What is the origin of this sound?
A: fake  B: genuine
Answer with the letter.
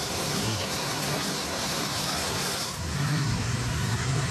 A